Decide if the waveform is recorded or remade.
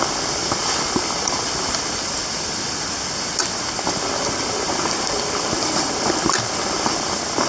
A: recorded